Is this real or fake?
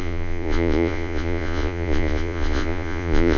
fake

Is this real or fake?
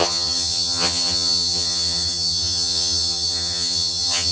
fake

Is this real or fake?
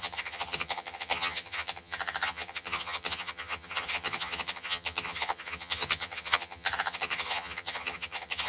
fake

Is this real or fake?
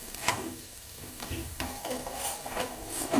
fake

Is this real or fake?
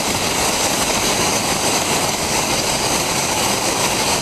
fake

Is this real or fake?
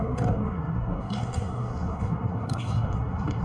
fake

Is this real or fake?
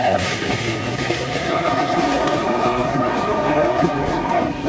fake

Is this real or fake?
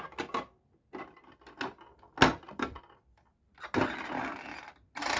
real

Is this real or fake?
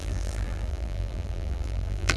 fake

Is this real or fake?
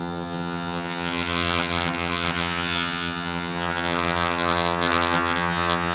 fake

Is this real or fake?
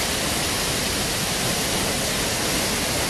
real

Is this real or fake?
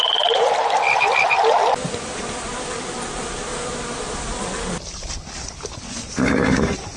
real